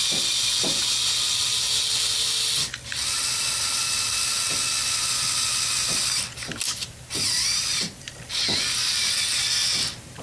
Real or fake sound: real